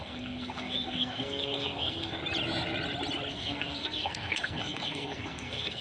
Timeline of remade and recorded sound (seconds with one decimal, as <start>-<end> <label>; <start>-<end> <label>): 0.0-2.2 remade; 2.2-3.3 recorded; 3.3-5.8 remade